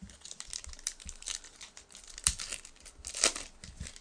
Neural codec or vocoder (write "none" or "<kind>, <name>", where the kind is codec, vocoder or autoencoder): none